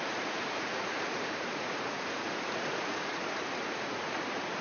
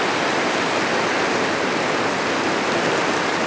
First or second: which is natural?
second